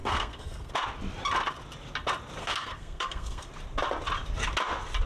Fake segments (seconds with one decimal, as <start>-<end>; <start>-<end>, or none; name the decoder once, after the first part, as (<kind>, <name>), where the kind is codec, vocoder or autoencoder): 0.0-0.7 (codec, SNAC); 2.4-3.5

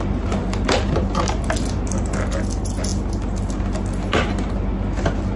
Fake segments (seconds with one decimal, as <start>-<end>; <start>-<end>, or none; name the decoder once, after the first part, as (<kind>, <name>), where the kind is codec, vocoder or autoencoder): none

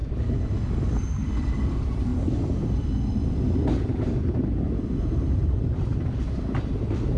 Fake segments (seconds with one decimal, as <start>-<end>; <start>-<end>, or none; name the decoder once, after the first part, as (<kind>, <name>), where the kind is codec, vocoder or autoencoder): 1.4-2.1 (vocoder, BigVGAN v2); 3.8-7.2

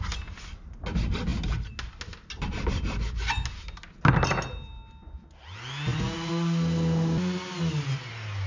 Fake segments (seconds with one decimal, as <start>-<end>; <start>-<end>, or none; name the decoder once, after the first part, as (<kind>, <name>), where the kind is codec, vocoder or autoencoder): none

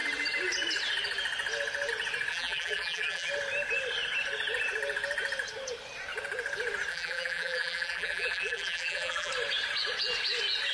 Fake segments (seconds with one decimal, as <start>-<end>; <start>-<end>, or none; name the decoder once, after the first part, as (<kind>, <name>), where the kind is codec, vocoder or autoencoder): 2.3-3.3 (vocoder, BigVGAN v2); 6.9-9.3